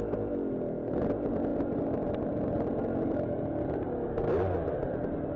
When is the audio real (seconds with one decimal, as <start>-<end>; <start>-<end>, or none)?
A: 0.0-5.4